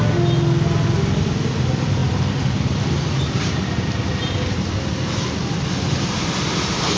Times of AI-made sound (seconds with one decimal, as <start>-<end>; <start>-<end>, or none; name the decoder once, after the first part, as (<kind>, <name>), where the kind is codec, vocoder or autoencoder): none